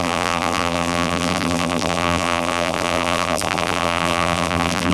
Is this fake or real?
fake